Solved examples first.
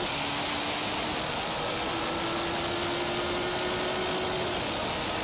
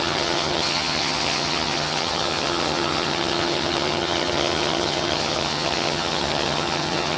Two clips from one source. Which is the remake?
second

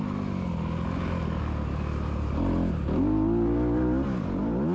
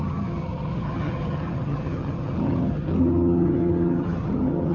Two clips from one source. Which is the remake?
second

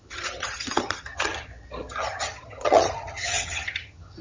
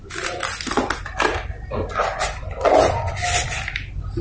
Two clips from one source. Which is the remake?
first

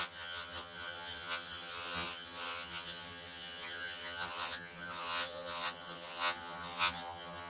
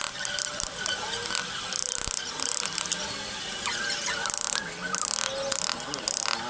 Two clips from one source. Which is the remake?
first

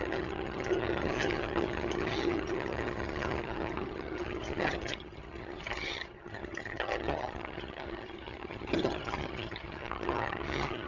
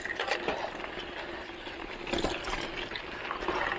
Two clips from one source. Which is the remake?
first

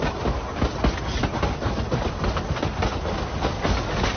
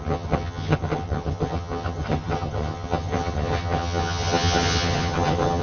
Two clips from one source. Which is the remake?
second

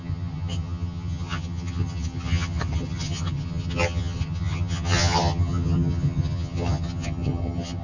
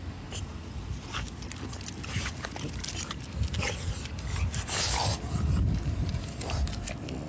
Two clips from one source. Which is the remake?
first